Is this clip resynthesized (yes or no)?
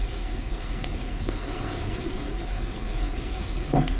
yes